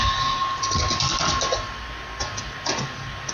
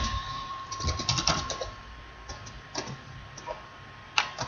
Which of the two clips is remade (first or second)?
second